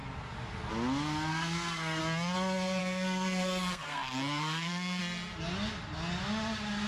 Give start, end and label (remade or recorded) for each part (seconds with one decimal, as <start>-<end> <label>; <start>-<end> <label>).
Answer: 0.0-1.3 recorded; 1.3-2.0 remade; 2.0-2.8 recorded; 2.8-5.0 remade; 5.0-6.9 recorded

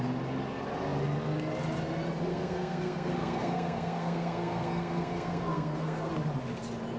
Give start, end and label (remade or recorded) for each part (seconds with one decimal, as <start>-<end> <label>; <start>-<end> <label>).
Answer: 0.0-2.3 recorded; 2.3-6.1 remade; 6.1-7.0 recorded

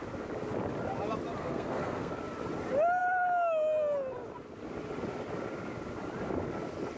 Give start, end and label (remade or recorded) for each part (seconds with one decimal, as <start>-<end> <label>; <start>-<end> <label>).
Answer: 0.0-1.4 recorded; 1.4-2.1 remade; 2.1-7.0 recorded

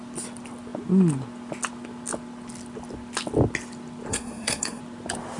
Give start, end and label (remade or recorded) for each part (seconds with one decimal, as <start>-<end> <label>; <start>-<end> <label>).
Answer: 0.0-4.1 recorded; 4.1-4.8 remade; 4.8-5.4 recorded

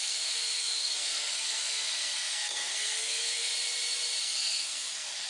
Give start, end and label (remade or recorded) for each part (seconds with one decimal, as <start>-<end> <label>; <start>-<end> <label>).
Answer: 0.0-3.5 remade; 3.5-4.2 recorded; 4.2-5.3 remade

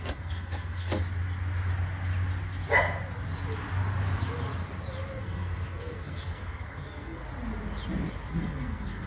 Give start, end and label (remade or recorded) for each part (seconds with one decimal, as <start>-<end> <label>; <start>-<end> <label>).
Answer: 0.0-1.0 remade; 1.0-5.2 recorded; 5.2-7.2 remade; 7.2-8.3 recorded; 8.3-9.1 remade